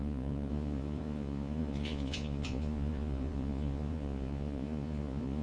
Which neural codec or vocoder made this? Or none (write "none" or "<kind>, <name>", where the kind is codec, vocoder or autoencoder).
vocoder, Vocos